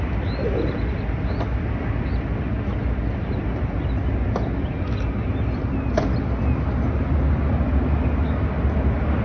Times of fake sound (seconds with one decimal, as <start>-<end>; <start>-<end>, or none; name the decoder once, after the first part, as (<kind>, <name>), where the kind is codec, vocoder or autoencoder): none